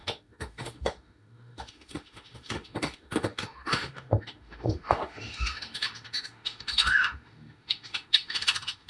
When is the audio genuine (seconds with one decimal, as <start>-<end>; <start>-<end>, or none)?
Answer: none